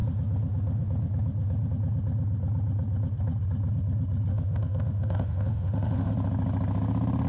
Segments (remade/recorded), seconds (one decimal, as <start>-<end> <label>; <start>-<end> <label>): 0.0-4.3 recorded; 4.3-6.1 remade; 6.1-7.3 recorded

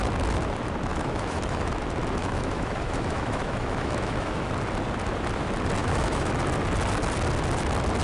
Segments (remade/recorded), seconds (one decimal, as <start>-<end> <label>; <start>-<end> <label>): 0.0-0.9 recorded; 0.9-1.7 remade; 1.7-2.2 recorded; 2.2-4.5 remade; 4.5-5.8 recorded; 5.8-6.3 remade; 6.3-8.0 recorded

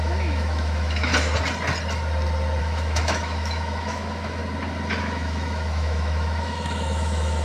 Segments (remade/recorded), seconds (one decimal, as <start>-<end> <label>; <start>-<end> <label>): 0.0-1.1 remade; 1.1-2.6 recorded; 2.6-4.4 remade; 4.4-5.0 recorded; 5.0-7.4 remade